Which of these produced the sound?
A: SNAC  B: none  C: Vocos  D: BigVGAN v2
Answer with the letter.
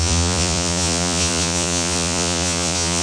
C